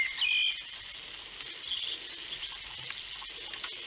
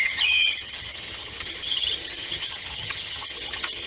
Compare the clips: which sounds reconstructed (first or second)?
second